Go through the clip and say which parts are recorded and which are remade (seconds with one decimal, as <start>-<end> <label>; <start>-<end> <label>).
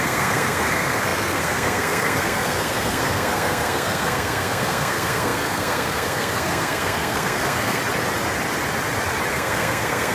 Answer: 0.0-7.8 remade; 7.8-9.3 recorded; 9.3-10.1 remade